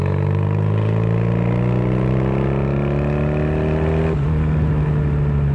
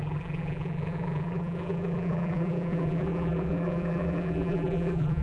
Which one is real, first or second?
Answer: first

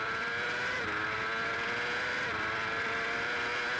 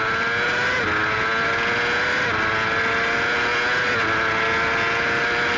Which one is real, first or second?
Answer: second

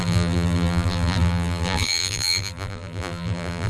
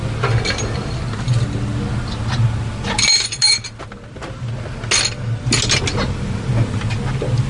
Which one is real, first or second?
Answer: second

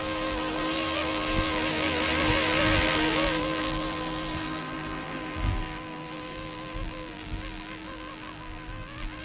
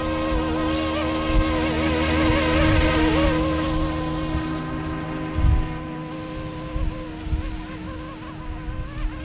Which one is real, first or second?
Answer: second